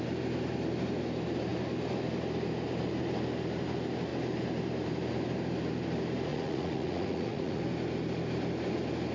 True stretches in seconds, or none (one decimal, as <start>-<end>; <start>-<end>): 0.0-6.3; 7.6-9.1